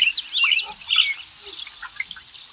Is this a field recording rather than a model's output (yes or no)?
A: yes